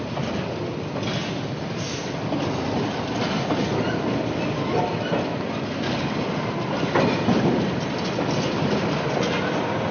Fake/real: real